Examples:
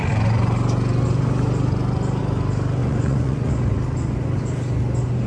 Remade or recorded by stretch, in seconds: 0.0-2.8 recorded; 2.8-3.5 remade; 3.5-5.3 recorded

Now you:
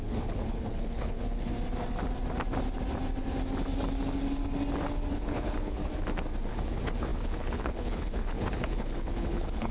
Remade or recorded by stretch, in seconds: 0.0-1.5 remade; 1.5-5.1 recorded; 5.1-5.8 remade; 5.8-6.5 recorded; 6.5-9.7 remade

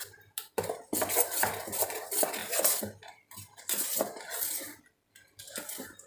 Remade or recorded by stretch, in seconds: 0.0-6.1 recorded

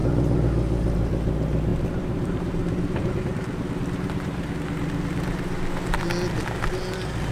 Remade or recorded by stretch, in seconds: 0.0-1.7 recorded; 1.7-4.6 remade; 4.6-7.3 recorded